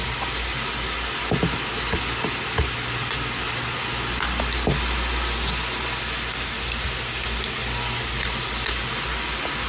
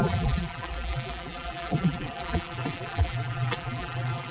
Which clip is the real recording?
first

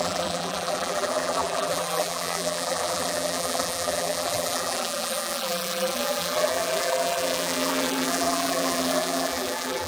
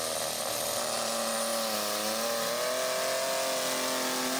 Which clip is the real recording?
second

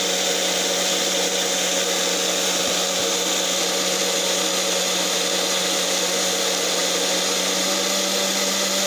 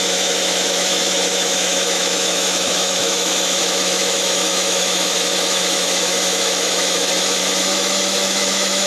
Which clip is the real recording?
first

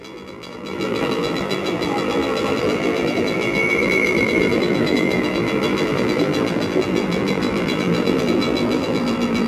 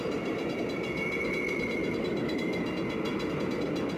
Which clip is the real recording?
second